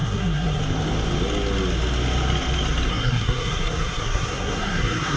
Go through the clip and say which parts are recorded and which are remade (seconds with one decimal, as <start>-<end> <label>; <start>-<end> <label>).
0.0-0.6 remade; 0.6-2.9 recorded; 2.9-5.2 remade